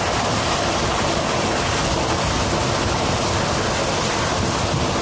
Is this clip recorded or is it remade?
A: recorded